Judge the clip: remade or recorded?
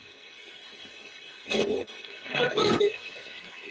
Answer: remade